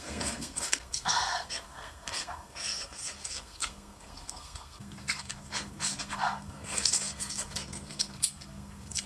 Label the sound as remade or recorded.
remade